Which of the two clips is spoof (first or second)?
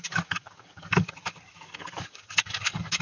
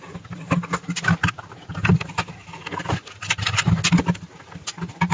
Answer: first